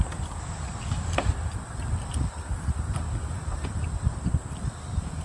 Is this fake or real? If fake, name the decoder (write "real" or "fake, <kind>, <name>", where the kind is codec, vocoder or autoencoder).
real